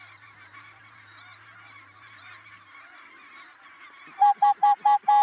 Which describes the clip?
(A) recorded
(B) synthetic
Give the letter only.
B